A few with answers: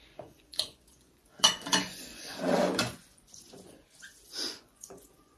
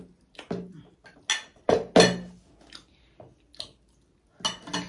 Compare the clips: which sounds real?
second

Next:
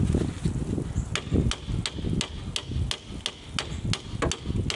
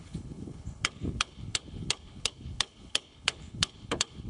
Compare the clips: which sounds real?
first